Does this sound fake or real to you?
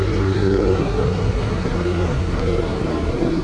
fake